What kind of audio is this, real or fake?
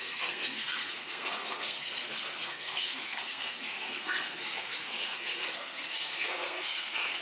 fake